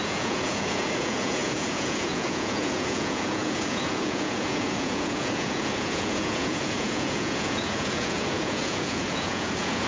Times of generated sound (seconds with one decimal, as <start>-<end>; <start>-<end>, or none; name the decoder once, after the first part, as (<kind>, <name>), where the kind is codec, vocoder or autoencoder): 0.0-9.9 (vocoder, Vocos)